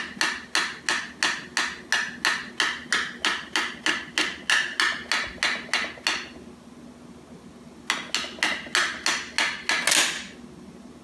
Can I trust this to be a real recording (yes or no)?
yes